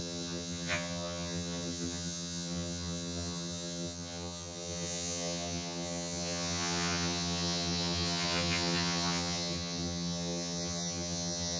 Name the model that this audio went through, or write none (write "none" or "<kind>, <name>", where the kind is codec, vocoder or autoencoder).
vocoder, HiFi-GAN